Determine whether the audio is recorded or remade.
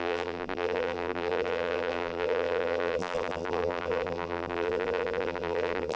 remade